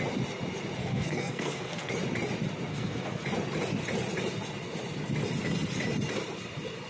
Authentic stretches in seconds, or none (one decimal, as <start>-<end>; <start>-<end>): 0.0-0.8; 1.9-2.7; 3.2-6.9